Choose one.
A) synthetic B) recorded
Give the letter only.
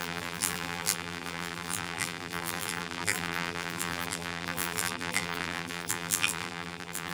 A